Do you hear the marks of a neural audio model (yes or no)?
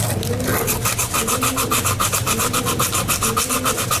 no